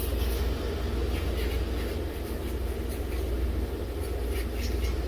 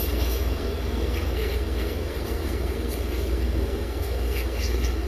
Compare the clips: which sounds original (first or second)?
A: first